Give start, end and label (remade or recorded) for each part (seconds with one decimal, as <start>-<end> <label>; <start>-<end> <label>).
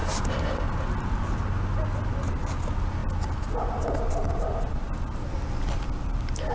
0.0-6.5 recorded